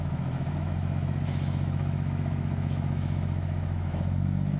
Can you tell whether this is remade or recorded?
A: remade